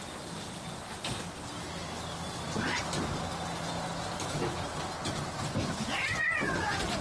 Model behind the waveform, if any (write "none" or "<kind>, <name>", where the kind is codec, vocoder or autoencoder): none